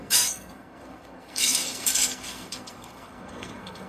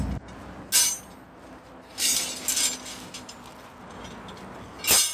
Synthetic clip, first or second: first